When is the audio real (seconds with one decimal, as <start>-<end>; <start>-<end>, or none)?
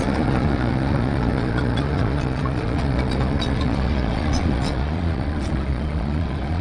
none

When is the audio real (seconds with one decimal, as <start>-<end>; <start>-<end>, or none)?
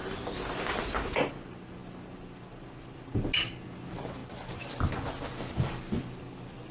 0.0-6.7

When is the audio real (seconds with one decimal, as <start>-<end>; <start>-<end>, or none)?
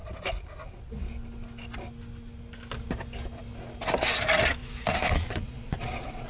0.0-4.6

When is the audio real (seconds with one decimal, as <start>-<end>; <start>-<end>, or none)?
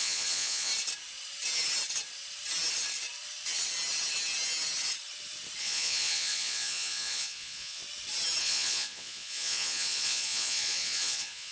0.7-5.6; 7.8-8.4